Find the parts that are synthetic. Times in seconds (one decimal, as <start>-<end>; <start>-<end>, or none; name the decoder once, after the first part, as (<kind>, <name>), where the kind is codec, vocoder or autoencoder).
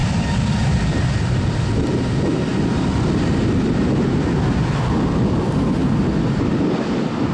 5.8-6.7 (vocoder, BigVGAN v2)